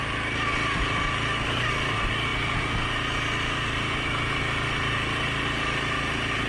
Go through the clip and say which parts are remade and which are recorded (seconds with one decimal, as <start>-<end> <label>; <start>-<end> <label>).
0.0-6.5 recorded